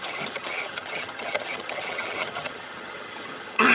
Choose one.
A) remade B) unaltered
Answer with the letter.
A